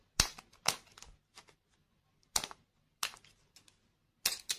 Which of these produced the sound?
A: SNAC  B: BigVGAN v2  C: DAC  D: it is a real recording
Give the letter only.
D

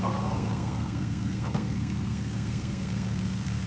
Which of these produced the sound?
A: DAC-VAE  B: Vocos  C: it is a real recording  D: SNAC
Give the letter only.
D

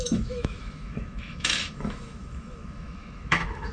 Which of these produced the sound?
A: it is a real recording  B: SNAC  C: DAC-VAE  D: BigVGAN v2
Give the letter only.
C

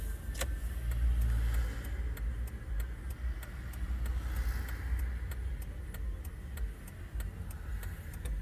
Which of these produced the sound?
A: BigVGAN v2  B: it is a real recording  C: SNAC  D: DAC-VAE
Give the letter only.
B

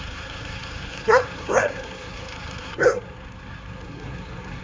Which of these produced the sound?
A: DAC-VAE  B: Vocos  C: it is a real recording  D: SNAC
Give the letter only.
D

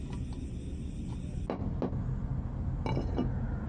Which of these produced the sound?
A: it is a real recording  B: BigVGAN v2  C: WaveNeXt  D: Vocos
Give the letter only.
A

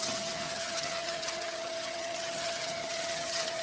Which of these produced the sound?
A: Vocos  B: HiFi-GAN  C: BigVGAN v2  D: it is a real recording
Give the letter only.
B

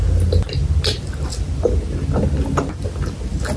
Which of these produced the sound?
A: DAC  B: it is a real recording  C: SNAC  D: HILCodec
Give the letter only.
B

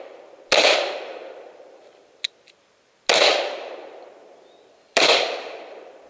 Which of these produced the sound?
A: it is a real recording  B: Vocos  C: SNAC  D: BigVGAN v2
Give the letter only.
A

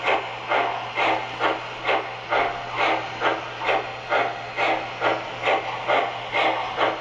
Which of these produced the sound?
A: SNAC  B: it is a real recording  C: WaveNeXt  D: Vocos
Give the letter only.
B